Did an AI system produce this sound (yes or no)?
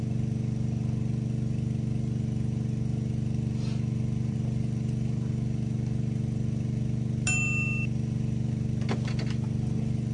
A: no